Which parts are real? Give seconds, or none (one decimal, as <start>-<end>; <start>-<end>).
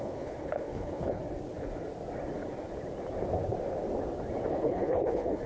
1.2-4.5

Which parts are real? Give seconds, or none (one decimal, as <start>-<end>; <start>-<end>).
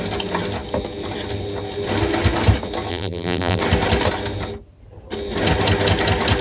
0.0-2.9; 3.6-6.4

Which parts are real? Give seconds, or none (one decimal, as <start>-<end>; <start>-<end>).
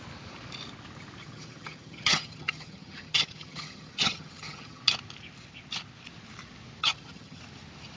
0.0-1.2; 4.8-6.8; 7.4-8.0